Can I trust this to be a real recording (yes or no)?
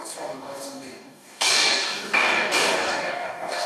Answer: no